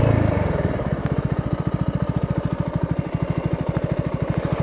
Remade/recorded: remade